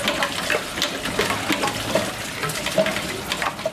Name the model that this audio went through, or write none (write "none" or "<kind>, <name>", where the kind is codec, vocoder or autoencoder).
none